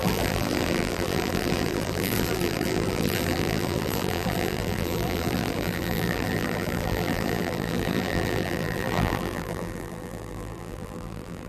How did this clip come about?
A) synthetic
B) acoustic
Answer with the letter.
A